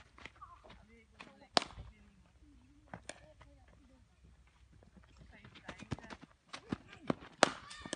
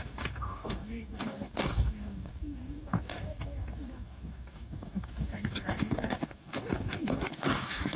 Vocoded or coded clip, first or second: second